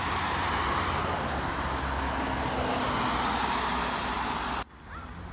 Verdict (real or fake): real